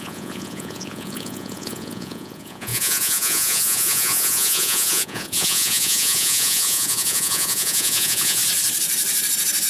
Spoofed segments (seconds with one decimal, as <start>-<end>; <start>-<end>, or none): 0.0-8.4